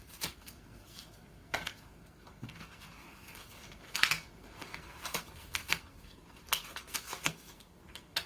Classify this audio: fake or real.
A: fake